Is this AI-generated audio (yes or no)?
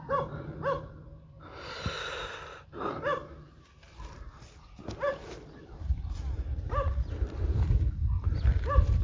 no